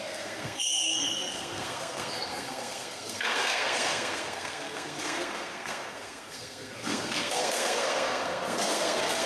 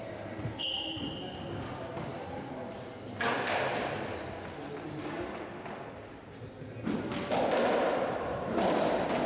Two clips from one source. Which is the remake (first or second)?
first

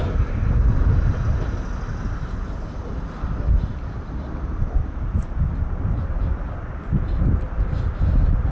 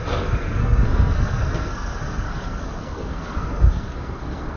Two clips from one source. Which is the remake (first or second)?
second